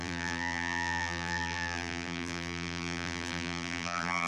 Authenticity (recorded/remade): remade